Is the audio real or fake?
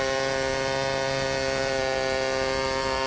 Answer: real